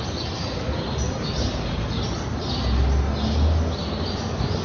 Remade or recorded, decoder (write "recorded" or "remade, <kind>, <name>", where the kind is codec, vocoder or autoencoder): recorded